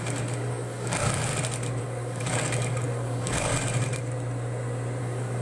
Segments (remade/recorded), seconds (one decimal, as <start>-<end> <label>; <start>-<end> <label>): 0.0-1.3 remade; 1.3-1.8 recorded; 1.8-3.5 remade; 3.5-5.0 recorded; 5.0-5.4 remade